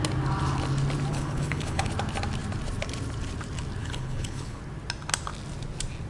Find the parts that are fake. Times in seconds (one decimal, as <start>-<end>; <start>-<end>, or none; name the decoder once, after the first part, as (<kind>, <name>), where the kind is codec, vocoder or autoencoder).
1.1-1.9 (codec, HILCodec); 3.8-4.6